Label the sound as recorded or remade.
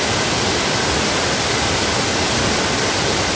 recorded